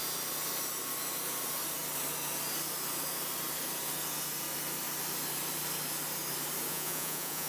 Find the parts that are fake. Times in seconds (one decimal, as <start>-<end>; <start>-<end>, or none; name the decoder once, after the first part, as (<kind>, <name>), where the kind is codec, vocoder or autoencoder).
6.7-7.5 (vocoder, Vocos)